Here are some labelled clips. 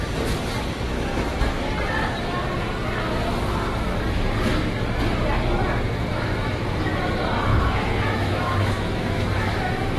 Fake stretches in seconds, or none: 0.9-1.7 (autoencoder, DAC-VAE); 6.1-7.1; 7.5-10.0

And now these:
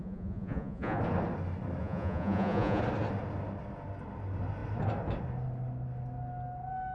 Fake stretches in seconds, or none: 0.0-1.0 (vocoder, Vocos); 1.8-2.8

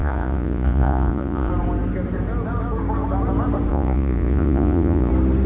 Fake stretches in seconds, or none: 0.0-1.5 (vocoder, Vocos); 3.7-5.1

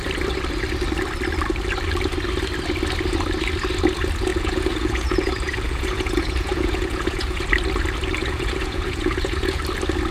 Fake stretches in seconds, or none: 4.3-7.5 (vocoder, Vocos); 8.2-9.6

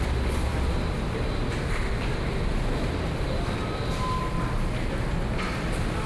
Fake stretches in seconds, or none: none